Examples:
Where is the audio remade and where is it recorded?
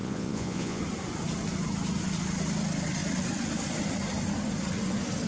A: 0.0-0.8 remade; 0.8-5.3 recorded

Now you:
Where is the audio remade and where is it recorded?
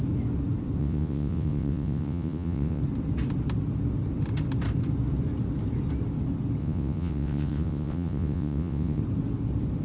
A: 0.0-0.8 recorded; 0.8-2.8 remade; 2.8-6.6 recorded; 6.6-9.0 remade; 9.0-9.8 recorded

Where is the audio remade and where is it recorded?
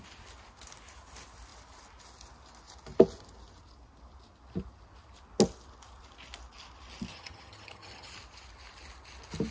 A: 0.0-7.1 recorded; 7.1-8.1 remade; 8.1-9.5 recorded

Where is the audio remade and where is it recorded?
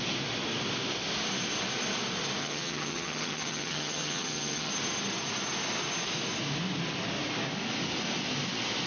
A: 0.0-2.4 recorded; 2.4-4.7 remade; 4.7-8.9 recorded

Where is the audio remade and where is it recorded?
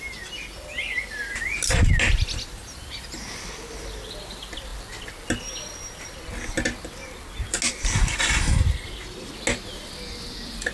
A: 0.0-10.7 recorded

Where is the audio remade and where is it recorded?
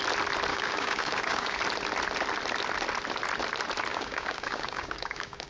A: 0.0-0.5 recorded; 0.5-1.6 remade; 1.6-3.9 recorded; 3.9-5.5 remade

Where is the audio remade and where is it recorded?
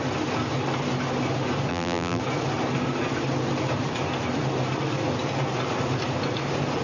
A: 0.0-1.7 recorded; 1.7-2.2 remade; 2.2-6.8 recorded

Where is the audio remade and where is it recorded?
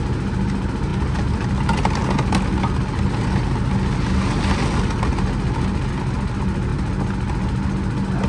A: 0.0-8.3 recorded